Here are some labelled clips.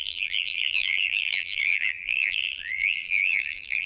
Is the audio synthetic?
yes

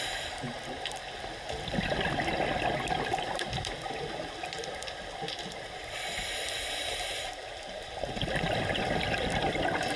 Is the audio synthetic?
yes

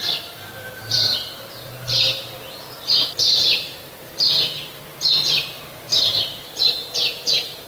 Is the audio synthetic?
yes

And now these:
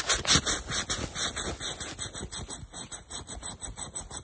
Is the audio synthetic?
no